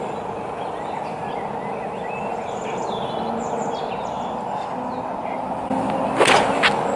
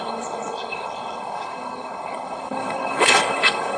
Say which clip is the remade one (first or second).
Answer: second